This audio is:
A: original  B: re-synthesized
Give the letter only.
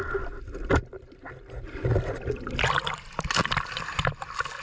A